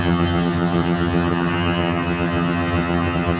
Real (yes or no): no